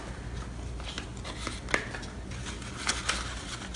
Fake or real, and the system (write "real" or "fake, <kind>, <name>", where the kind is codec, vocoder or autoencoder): real